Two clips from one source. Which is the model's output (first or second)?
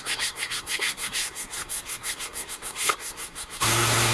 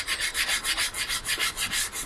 first